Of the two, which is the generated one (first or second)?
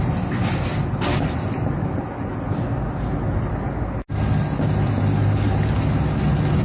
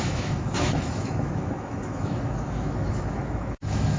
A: second